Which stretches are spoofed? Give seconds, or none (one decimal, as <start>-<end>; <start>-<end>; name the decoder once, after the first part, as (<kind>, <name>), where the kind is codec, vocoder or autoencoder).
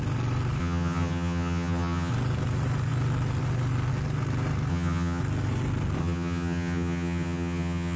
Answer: 0.6-2.1 (vocoder, HiFi-GAN); 4.7-5.2; 6.0-8.0